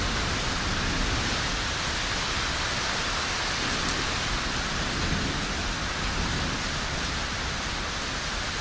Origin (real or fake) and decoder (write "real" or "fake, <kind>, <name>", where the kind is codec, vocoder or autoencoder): real